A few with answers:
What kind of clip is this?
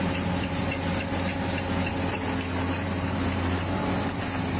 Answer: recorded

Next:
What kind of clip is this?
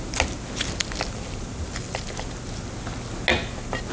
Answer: recorded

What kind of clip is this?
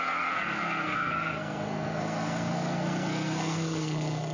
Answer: remade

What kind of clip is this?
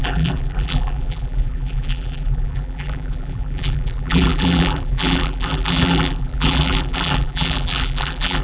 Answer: remade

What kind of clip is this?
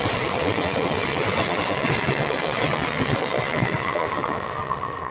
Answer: remade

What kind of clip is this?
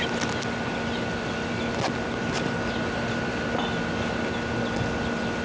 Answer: recorded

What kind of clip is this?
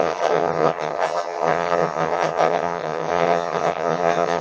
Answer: remade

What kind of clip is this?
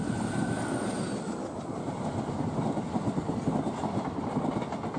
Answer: recorded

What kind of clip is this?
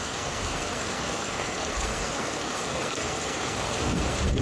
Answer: remade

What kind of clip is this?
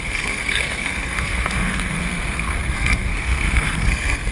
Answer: remade